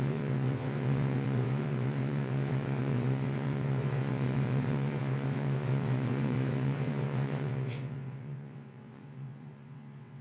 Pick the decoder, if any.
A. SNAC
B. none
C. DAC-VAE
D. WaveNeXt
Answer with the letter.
D